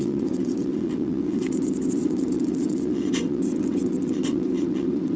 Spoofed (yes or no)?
yes